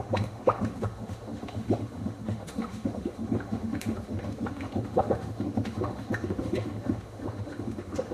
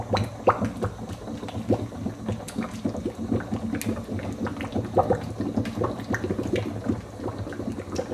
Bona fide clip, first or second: second